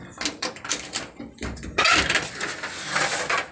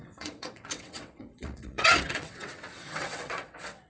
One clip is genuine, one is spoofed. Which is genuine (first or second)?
first